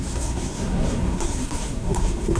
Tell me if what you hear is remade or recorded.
remade